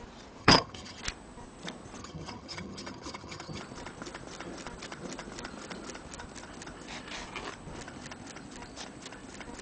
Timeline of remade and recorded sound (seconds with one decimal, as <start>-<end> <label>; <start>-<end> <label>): 0.0-0.4 recorded; 0.4-1.0 remade; 1.0-2.0 recorded; 2.0-3.6 remade; 3.6-9.6 recorded